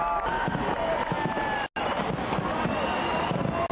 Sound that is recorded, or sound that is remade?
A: recorded